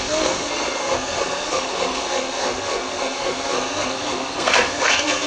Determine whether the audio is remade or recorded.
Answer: remade